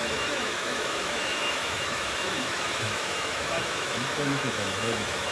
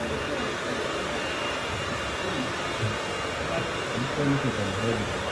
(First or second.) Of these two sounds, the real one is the second